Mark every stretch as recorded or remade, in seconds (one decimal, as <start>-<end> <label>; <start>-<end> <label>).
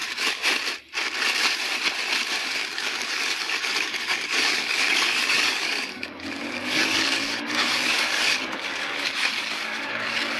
0.0-0.4 remade; 0.4-2.4 recorded; 2.4-10.4 remade